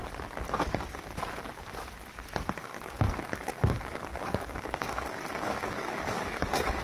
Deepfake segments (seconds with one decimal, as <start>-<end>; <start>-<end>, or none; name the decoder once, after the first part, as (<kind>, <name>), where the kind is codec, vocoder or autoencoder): 2.6-6.8 (codec, DAC)